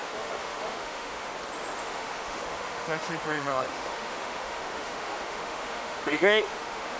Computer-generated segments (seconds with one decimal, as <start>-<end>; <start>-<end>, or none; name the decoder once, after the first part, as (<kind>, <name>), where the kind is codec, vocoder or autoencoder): 0.0-1.3 (autoencoder, DAC-VAE); 1.8-7.0

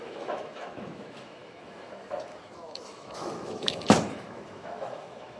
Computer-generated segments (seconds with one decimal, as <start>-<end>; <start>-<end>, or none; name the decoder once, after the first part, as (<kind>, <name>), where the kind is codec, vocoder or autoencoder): 0.0-5.4 (autoencoder, DAC-VAE)

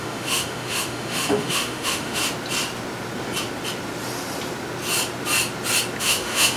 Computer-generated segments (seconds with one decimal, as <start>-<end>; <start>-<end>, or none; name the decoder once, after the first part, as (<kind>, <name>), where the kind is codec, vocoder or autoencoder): 0.0-2.2 (autoencoder, DAC-VAE); 6.0-6.6

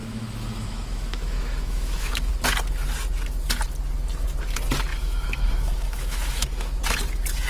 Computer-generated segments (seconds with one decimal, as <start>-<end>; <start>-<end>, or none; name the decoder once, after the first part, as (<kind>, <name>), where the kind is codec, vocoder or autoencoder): 0.0-2.3 (autoencoder, DAC-VAE); 4.9-6.8

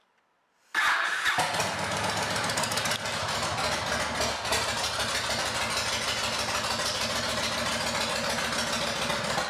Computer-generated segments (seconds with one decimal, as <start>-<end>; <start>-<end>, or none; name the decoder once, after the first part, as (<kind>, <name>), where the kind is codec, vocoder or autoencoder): none

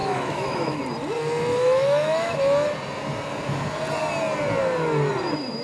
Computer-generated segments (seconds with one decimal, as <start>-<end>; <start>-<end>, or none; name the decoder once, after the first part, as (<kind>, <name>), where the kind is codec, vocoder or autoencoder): 0.0-0.8 (autoencoder, DAC-VAE); 1.5-2.4

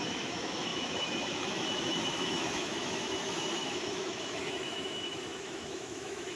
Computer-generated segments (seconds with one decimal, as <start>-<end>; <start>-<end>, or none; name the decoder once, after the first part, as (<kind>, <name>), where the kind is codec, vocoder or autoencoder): 0.0-6.4 (autoencoder, DAC-VAE)